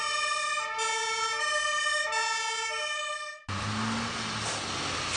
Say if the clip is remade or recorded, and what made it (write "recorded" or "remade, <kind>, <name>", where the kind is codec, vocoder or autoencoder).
recorded